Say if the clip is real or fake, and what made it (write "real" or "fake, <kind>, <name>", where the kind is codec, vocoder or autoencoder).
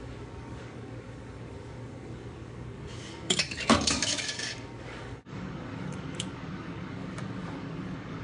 fake, codec, DAC